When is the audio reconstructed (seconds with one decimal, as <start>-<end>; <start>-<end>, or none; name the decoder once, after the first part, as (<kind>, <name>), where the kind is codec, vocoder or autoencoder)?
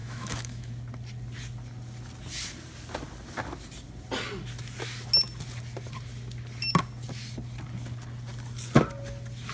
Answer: 0.0-0.7 (autoencoder, DAC-VAE)